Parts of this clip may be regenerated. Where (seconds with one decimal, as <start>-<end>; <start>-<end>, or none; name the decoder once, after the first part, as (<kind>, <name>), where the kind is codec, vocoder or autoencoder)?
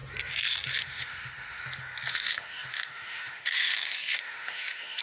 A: 0.8-1.6 (autoencoder, DAC-VAE); 2.1-5.0